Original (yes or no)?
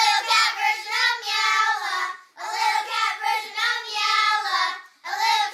yes